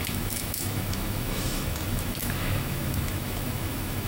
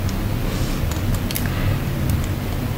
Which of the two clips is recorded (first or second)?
second